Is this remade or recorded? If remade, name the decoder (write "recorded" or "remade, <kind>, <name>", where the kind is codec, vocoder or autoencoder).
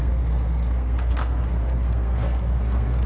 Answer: remade, codec, SNAC